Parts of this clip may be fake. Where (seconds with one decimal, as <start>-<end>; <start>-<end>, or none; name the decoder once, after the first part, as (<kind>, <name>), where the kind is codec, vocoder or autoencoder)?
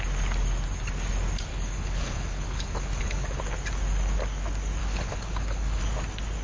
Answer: 1.5-3.4 (codec, HILCodec); 4.8-5.8